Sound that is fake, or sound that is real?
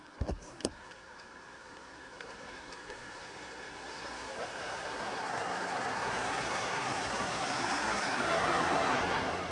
fake